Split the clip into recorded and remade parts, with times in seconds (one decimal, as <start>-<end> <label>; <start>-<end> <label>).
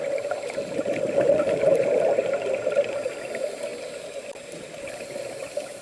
0.0-3.7 remade; 3.7-5.3 recorded; 5.3-5.8 remade